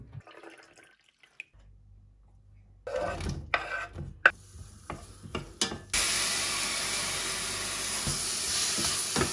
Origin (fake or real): real